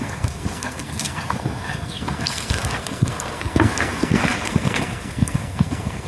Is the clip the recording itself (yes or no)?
no